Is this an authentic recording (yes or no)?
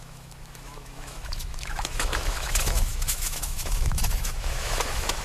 no